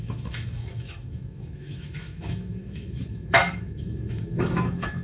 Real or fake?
fake